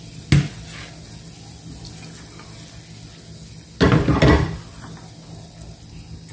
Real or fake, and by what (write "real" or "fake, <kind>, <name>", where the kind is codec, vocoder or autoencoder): real